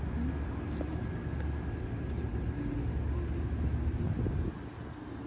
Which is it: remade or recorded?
recorded